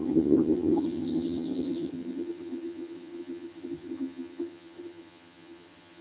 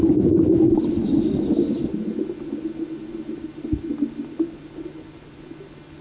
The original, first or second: second